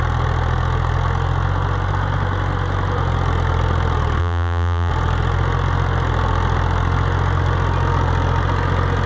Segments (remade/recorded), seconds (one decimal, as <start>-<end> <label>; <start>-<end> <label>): 0.0-4.2 recorded; 4.2-4.9 remade; 4.9-9.1 recorded